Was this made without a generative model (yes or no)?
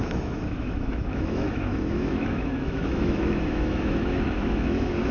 no